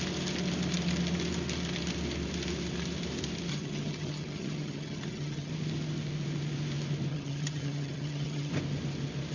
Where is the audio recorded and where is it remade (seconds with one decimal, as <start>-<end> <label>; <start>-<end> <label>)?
0.0-3.5 recorded; 3.5-5.5 remade; 5.5-7.1 recorded; 7.1-8.5 remade; 8.5-9.3 recorded